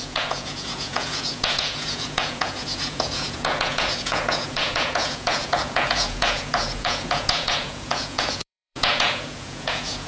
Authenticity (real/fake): fake